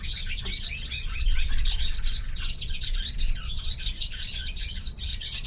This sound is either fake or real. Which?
fake